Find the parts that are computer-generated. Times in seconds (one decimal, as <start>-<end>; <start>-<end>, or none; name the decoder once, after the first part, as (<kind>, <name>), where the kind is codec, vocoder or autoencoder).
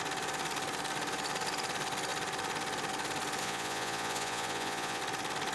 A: 3.4-5.0 (vocoder, Vocos)